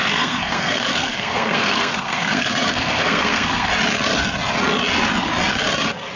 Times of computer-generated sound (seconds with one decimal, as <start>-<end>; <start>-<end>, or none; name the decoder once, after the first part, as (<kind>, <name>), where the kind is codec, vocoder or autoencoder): 0.0-3.7 (codec, SNAC)